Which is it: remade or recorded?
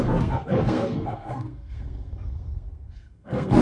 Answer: remade